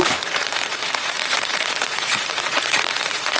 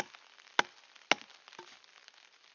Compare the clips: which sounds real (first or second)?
second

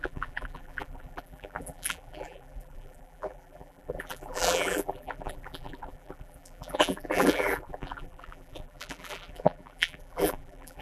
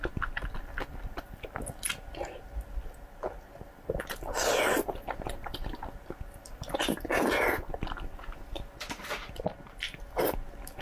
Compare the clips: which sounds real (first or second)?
second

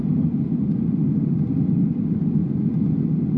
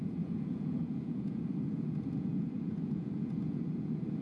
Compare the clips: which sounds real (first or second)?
first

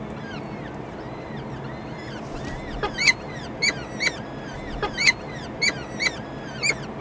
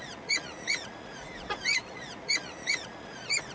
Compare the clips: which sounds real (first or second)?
first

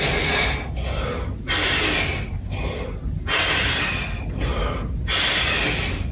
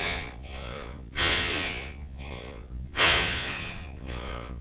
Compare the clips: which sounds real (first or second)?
first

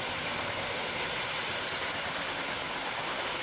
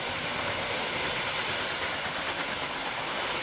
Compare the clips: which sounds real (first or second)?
first